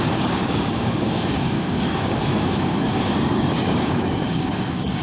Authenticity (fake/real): fake